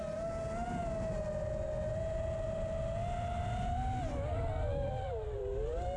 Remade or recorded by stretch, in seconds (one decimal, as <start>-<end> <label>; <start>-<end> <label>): 0.0-6.0 recorded